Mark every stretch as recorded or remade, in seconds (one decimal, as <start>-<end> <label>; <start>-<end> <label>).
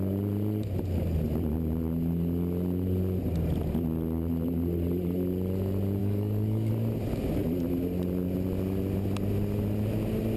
0.0-6.0 recorded; 6.0-6.7 remade; 6.7-10.4 recorded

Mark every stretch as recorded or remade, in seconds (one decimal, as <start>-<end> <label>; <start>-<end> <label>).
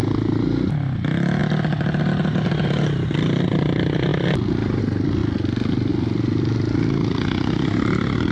0.0-8.3 recorded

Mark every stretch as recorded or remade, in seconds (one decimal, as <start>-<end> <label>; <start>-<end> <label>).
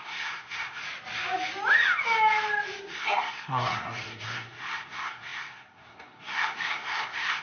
0.0-0.8 remade; 0.8-2.8 recorded; 2.8-7.4 remade